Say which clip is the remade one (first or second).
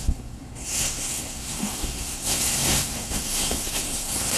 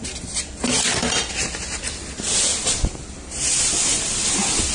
first